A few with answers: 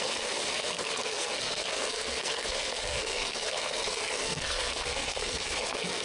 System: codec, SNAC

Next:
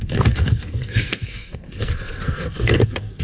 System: codec, SNAC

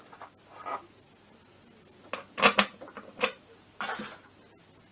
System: none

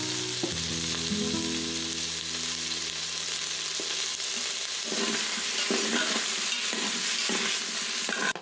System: none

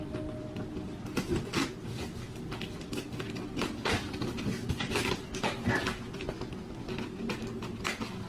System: none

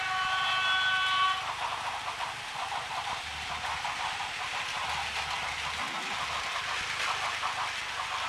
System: none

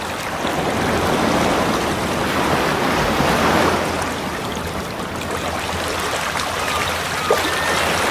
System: none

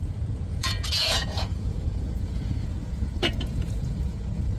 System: vocoder, Vocos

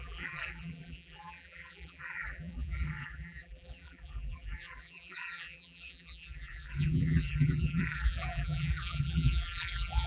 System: vocoder, BigVGAN v2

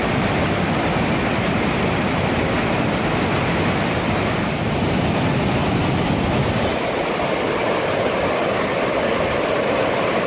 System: vocoder, BigVGAN v2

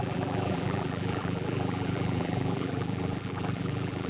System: vocoder, BigVGAN v2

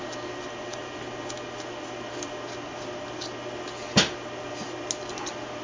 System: none